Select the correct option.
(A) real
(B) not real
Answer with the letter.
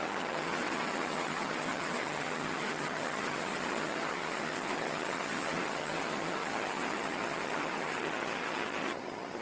B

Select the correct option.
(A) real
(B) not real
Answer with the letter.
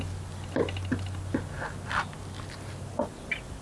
A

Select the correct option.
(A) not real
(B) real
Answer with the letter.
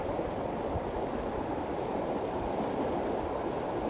A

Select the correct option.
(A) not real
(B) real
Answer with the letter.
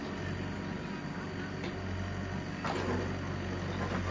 B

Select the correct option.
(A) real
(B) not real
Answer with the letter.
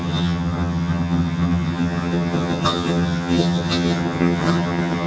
B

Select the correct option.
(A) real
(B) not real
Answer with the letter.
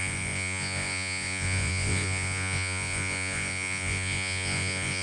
B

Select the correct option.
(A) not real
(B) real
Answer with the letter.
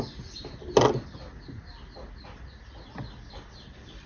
B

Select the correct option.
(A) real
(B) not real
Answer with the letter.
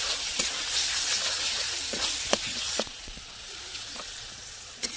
B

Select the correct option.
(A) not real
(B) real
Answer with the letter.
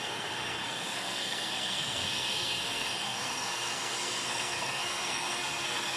A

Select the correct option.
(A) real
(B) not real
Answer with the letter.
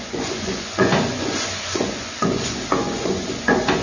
B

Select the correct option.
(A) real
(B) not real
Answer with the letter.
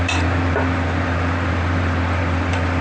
B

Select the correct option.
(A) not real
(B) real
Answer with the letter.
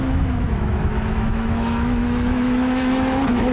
A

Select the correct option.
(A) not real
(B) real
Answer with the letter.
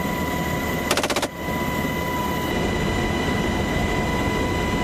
B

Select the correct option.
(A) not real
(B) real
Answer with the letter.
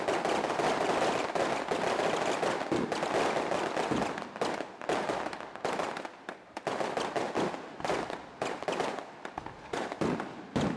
B